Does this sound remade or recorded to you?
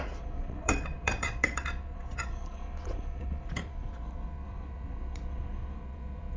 remade